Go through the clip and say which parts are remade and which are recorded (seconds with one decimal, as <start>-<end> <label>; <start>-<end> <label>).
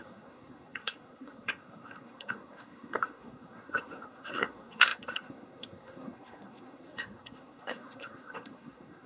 0.0-9.1 remade